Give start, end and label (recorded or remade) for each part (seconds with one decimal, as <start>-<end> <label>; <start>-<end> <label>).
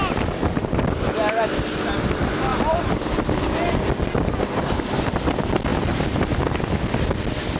0.0-7.6 recorded